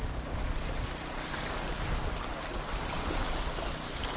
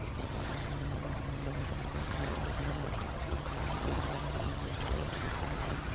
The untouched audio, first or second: first